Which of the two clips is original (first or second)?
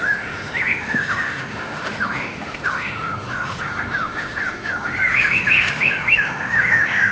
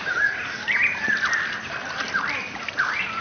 second